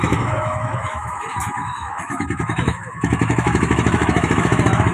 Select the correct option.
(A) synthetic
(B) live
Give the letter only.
A